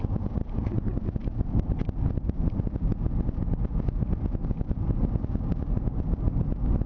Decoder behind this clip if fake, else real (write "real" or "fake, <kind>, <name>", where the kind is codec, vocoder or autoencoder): fake, vocoder, BigVGAN v2